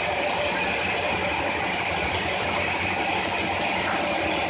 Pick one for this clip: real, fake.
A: real